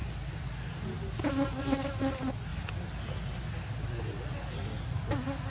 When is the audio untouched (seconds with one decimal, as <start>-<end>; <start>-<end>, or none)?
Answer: 0.0-5.5